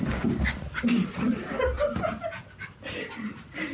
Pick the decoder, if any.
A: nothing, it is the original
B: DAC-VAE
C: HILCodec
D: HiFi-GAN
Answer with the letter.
A